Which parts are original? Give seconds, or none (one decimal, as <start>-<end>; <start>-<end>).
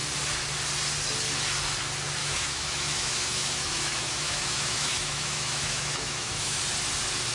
0.0-2.2; 6.6-7.3